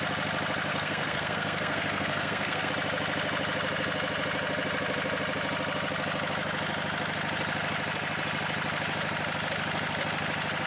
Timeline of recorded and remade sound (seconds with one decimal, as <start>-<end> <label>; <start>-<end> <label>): 0.0-0.7 recorded; 0.7-2.7 remade; 2.7-10.7 recorded